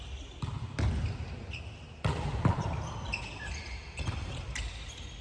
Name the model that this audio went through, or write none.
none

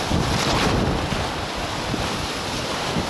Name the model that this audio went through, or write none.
none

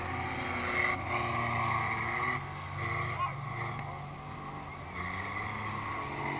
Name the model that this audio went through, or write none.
none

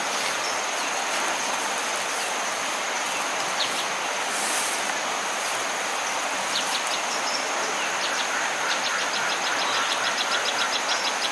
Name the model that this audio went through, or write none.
none